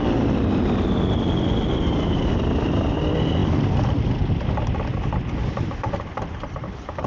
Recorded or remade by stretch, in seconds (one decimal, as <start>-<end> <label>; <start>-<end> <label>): 0.0-7.1 recorded